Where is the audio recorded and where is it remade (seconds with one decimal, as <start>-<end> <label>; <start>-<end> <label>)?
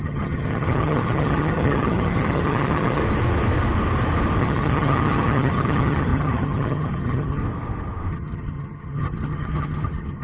0.0-3.0 remade; 3.0-4.4 recorded; 4.4-7.4 remade; 7.4-8.1 recorded; 8.1-10.2 remade